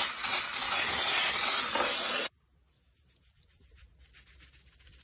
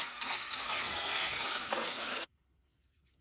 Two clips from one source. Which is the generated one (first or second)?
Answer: second